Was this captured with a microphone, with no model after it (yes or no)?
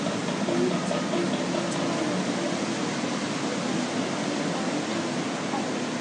yes